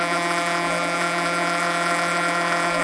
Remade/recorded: remade